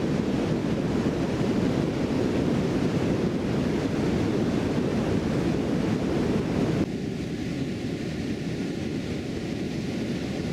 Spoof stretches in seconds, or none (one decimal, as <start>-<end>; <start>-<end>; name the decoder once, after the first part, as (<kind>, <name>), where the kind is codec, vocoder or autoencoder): 0.6-3.0 (vocoder, BigVGAN v2); 4.9-5.8